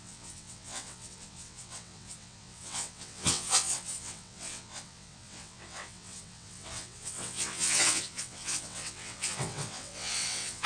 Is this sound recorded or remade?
remade